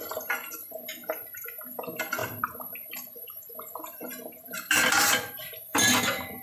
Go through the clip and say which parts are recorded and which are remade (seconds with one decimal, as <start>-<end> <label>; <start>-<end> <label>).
0.0-0.9 remade; 0.9-1.8 recorded; 1.8-6.4 remade